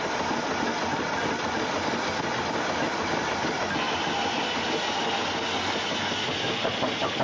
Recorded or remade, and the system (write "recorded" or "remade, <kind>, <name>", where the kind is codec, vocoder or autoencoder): recorded